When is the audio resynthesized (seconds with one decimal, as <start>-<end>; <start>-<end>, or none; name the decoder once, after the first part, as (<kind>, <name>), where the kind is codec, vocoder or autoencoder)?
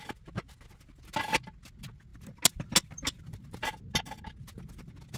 none